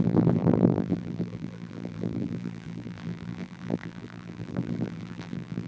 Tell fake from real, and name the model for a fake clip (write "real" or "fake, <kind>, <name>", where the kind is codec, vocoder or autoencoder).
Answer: fake, vocoder, BigVGAN v2